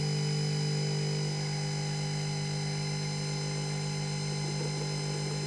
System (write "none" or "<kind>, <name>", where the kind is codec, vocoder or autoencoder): none